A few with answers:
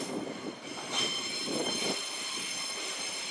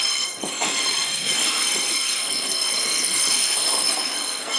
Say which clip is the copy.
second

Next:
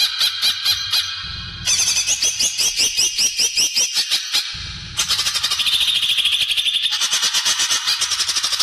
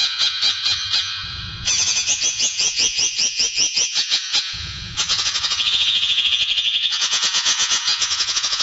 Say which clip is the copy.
second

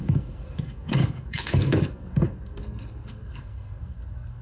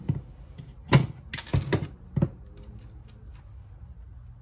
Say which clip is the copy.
first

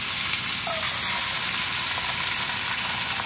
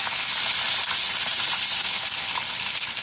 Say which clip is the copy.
second